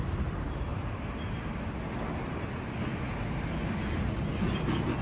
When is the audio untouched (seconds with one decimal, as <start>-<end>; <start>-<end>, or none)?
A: 0.7-3.7

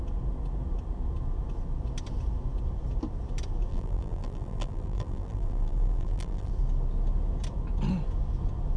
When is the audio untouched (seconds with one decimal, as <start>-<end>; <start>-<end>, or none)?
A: 0.0-3.7; 6.5-8.8

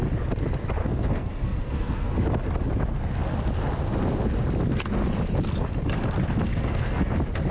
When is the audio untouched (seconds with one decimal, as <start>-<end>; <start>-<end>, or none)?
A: 0.0-0.8; 2.1-6.5; 7.1-7.5

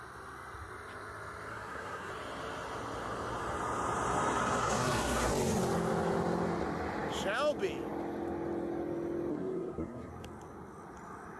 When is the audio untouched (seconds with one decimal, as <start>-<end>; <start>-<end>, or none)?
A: 0.0-1.5; 2.1-4.6; 5.3-9.3; 10.1-11.4

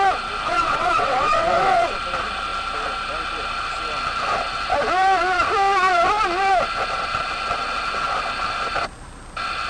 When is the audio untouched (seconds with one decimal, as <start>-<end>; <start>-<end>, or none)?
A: 0.0-0.5; 2.0-9.7

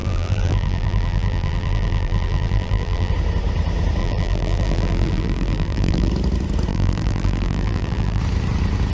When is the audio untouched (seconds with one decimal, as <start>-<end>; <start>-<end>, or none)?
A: 3.1-4.0; 6.1-6.7; 8.2-8.9

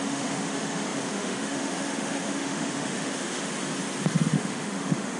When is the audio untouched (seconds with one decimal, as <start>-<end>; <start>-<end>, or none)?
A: 3.5-4.1